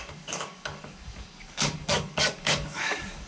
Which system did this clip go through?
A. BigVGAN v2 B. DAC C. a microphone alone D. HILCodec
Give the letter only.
B